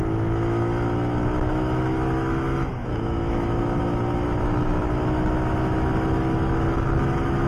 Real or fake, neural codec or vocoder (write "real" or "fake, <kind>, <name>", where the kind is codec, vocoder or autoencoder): fake, autoencoder, DAC-VAE